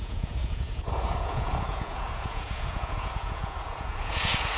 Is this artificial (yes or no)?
yes